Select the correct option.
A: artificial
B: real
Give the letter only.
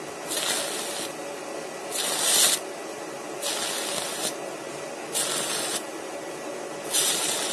B